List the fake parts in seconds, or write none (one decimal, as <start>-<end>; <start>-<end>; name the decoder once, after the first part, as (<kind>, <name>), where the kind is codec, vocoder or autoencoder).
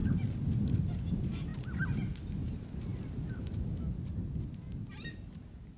none